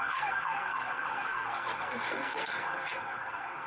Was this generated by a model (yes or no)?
yes